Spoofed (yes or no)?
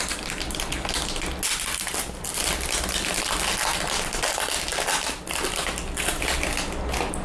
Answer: no